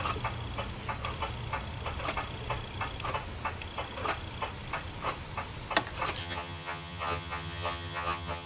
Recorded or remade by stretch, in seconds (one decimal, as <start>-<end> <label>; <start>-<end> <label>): 0.0-6.2 recorded; 6.2-8.5 remade